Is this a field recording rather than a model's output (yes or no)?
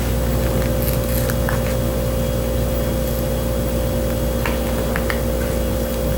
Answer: yes